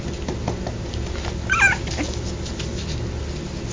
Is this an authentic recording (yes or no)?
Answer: yes